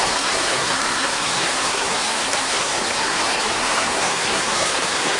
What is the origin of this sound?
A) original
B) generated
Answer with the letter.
B